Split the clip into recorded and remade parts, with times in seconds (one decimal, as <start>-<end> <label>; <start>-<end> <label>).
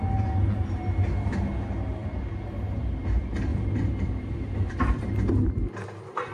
0.0-2.0 recorded; 2.0-2.8 remade; 2.8-3.5 recorded; 3.5-4.9 remade; 4.9-6.3 recorded